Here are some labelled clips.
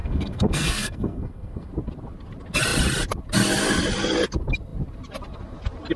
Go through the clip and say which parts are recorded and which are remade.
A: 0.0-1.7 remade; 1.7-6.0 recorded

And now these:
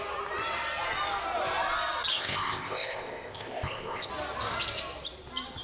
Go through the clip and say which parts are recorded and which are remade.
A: 0.0-2.1 recorded; 2.1-4.1 remade; 4.1-5.6 recorded